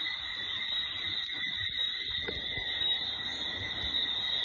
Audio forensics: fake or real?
real